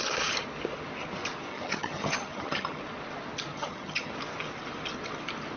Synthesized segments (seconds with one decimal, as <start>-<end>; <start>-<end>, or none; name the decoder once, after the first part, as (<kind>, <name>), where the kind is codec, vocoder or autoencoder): 1.5-2.8 (vocoder, HiFi-GAN); 3.5-4.1